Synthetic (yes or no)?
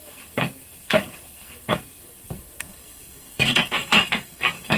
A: yes